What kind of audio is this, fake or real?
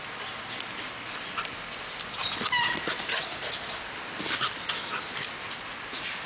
real